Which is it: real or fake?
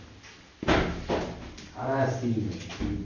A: real